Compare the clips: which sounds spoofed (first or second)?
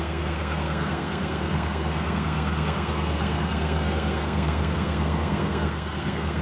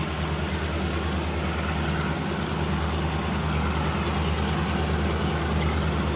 first